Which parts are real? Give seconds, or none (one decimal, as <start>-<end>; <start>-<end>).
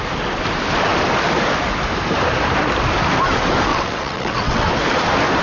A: 0.0-3.7; 4.7-5.4